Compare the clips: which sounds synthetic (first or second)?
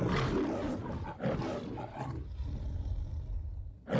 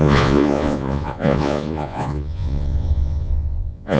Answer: second